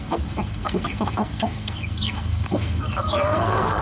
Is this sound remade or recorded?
remade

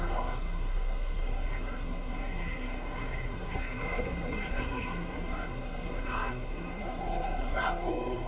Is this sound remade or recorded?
remade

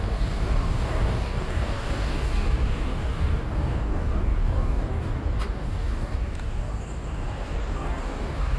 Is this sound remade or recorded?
remade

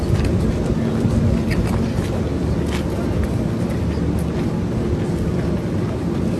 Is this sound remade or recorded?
recorded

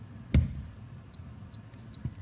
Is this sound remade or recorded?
recorded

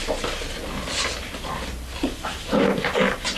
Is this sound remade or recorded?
recorded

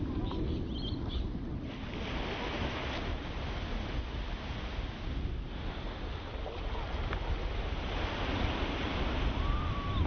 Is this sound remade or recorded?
recorded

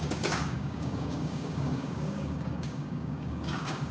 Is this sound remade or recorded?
remade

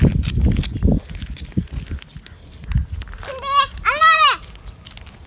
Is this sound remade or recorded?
recorded